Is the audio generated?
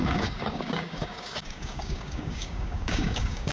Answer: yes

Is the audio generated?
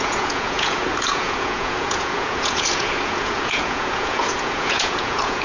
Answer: yes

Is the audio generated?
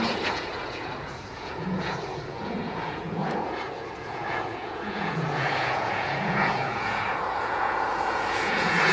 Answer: yes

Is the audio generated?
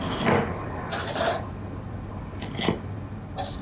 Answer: no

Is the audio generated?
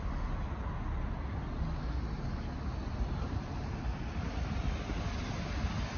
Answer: no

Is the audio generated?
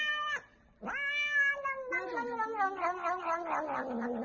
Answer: no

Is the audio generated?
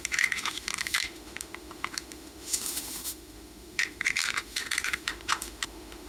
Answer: yes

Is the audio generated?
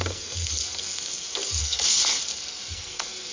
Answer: yes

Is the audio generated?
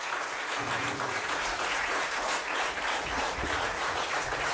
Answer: yes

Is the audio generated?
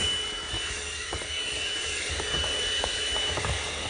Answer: yes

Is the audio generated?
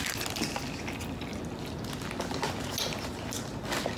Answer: no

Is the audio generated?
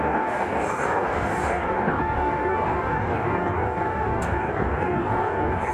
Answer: yes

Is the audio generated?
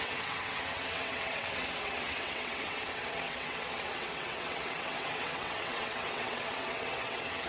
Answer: yes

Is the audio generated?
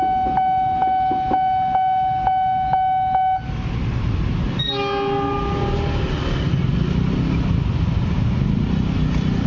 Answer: no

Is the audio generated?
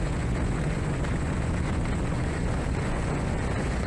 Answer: yes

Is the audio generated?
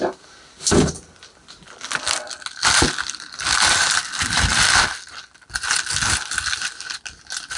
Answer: no